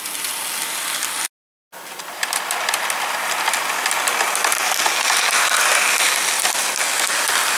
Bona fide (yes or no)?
yes